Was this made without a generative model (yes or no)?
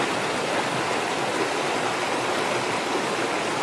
yes